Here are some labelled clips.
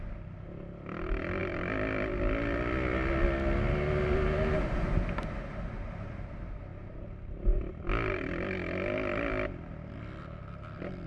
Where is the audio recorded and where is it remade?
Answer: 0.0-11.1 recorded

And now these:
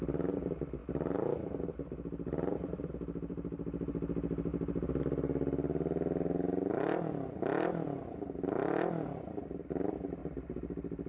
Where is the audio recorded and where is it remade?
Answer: 0.0-3.3 recorded; 3.3-3.9 remade; 3.9-4.5 recorded; 4.5-5.0 remade; 5.0-10.2 recorded; 10.2-11.1 remade

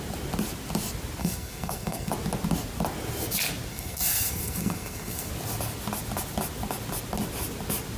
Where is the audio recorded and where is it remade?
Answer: 0.0-1.2 recorded; 1.2-2.1 remade; 2.1-3.7 recorded; 3.7-5.3 remade; 5.3-8.0 recorded

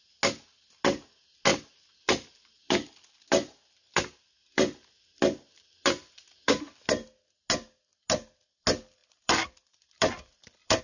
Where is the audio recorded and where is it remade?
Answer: 0.0-1.5 recorded; 1.5-6.6 remade; 6.6-9.0 recorded; 9.0-10.8 remade

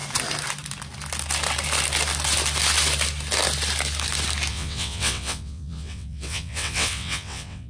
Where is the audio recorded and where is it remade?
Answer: 0.0-4.5 recorded; 4.5-7.7 remade

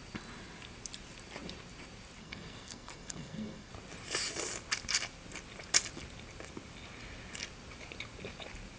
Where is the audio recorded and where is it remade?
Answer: 0.0-2.2 recorded; 2.2-3.7 remade; 3.7-8.8 recorded